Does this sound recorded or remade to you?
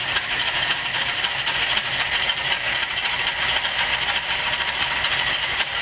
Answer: recorded